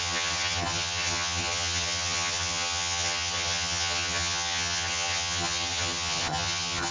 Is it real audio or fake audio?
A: fake